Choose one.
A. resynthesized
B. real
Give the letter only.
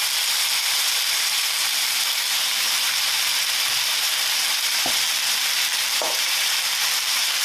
A